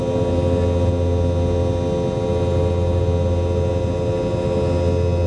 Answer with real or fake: real